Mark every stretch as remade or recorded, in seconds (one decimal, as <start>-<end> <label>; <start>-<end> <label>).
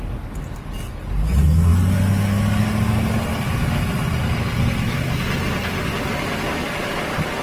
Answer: 0.0-7.4 recorded